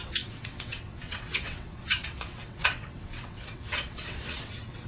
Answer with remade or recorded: remade